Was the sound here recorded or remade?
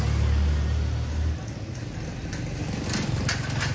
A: recorded